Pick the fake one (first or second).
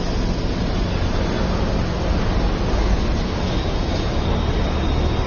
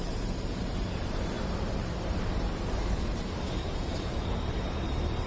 second